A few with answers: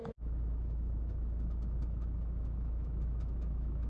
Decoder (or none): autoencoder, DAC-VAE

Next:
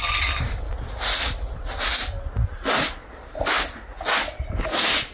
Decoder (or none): none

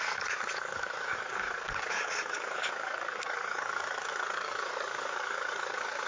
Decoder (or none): codec, DAC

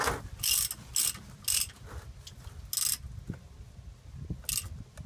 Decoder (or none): none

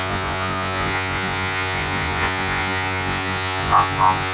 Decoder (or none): vocoder, Vocos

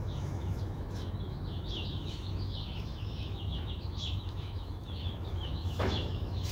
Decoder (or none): autoencoder, DAC-VAE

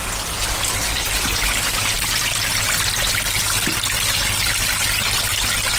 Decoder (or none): none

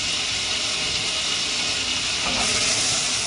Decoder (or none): none